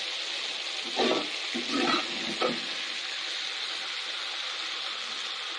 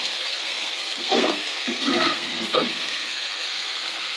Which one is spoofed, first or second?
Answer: second